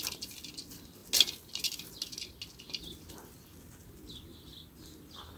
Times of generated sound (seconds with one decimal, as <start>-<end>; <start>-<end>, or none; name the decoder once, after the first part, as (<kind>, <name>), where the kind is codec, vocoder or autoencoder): none